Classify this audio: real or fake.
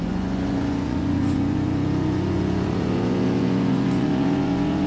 fake